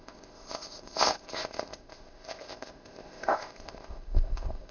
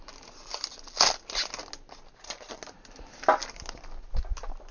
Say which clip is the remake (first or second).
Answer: first